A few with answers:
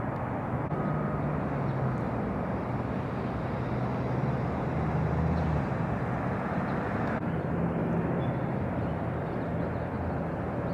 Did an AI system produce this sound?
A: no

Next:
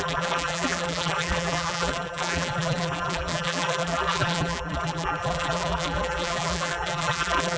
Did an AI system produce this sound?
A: yes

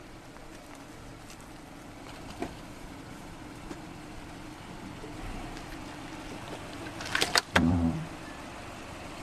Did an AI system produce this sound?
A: yes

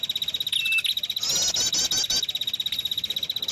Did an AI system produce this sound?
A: no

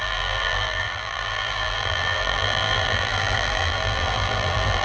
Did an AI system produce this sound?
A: yes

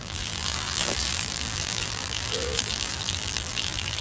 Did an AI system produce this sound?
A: yes